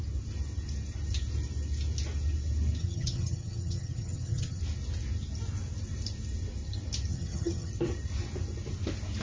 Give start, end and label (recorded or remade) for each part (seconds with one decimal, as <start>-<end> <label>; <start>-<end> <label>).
0.0-2.8 recorded; 2.8-4.6 remade; 4.6-7.1 recorded; 7.1-7.7 remade; 7.7-9.2 recorded